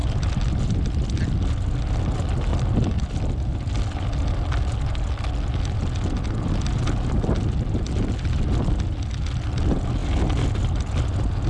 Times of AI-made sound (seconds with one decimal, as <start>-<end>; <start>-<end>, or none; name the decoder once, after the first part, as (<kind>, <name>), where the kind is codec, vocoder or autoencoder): none